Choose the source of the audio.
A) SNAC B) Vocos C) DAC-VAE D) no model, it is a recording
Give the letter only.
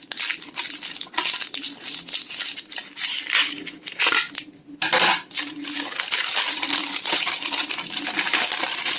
D